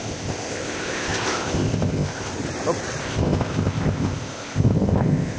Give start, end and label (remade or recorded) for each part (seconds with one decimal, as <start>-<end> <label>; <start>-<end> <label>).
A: 0.0-2.3 remade; 2.3-3.0 recorded; 3.0-5.4 remade